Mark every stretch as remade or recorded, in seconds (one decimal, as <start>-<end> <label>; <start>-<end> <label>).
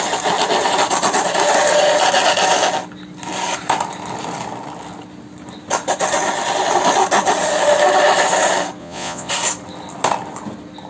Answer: 0.0-8.8 recorded; 8.8-9.3 remade; 9.3-10.9 recorded